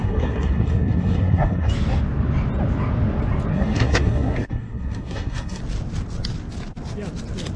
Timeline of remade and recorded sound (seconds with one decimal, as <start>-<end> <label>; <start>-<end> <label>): 0.0-1.7 remade; 1.7-3.5 recorded; 3.5-5.6 remade; 5.6-7.6 recorded